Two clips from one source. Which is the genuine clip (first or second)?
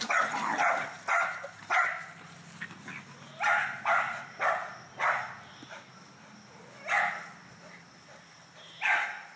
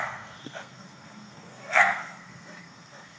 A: first